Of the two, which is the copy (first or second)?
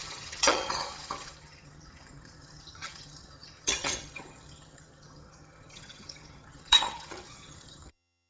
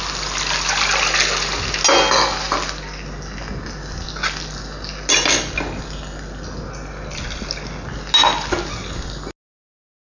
first